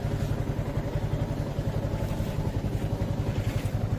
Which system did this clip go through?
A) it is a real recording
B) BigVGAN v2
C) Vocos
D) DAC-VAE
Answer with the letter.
A